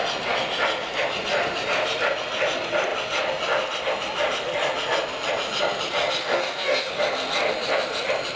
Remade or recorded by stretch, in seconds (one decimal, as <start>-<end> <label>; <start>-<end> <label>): 0.0-6.2 recorded; 6.2-6.9 remade; 6.9-8.4 recorded